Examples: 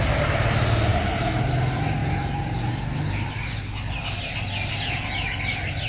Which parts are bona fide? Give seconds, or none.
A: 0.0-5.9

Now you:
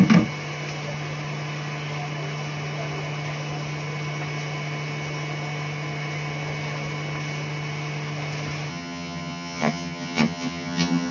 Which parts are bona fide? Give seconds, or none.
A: 0.0-8.7

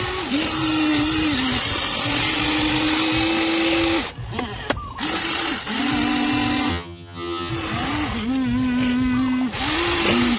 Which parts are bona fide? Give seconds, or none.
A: 0.0-6.7; 7.5-10.4

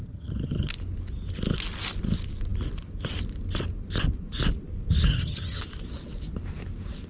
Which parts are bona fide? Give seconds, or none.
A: 0.7-5.1; 5.6-7.1

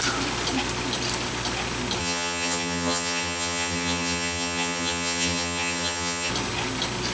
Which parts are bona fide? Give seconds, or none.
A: 0.0-2.0; 6.3-7.1

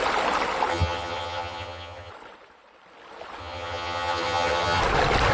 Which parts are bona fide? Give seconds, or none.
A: 0.0-0.7; 2.1-3.4; 4.8-5.3

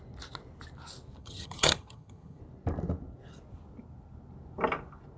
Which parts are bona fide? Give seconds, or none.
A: 0.0-1.2; 2.4-5.2

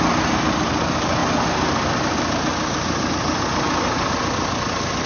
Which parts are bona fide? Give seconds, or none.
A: 0.0-5.1